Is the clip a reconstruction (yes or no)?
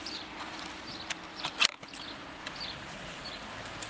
no